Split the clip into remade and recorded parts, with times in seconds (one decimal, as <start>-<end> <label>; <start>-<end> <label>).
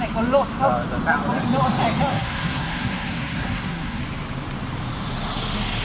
0.0-2.1 recorded; 2.1-4.0 remade; 4.0-5.8 recorded